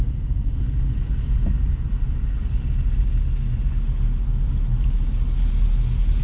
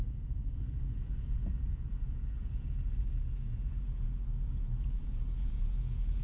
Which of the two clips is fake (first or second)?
second